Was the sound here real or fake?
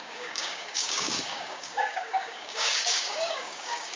fake